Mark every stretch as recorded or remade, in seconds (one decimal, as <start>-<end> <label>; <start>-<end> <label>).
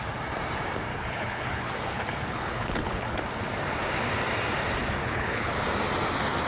0.0-0.9 recorded; 0.9-3.2 remade; 3.2-5.0 recorded; 5.0-5.5 remade; 5.5-6.5 recorded